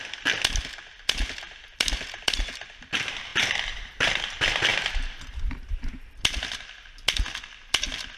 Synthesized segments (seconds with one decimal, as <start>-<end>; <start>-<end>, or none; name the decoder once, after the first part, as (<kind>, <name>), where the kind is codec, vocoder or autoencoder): none